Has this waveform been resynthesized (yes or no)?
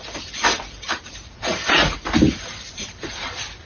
yes